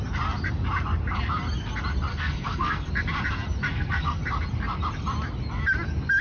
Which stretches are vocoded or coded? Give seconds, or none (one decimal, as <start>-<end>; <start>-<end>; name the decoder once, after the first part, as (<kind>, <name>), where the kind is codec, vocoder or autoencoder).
2.1-2.9 (codec, SNAC); 3.7-4.2